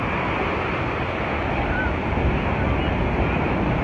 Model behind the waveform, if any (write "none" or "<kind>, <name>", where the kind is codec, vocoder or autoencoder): none